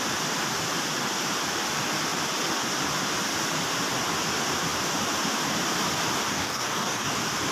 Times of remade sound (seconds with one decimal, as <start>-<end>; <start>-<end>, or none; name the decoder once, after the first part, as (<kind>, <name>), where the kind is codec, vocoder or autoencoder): 6.3-7.1 (codec, DAC)